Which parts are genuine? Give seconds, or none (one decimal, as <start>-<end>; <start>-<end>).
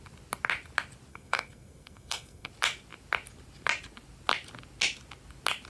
0.0-1.1; 2.5-5.7